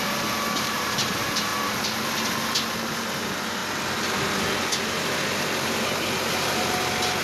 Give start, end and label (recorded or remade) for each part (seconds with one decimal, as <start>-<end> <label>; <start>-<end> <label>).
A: 0.0-1.5 remade; 1.5-2.7 recorded; 2.7-3.6 remade; 3.6-7.2 recorded